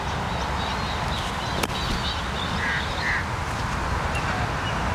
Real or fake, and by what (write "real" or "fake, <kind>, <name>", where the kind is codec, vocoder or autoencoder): real